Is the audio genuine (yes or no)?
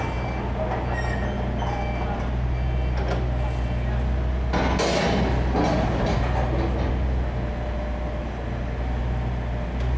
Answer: yes